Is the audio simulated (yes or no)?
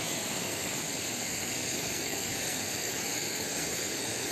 yes